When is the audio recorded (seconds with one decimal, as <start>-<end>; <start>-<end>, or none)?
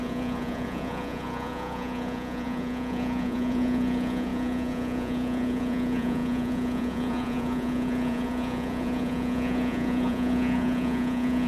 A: none